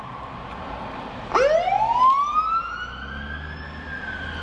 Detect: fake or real real